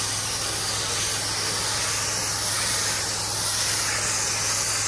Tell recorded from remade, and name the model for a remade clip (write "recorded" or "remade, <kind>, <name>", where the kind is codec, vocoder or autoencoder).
recorded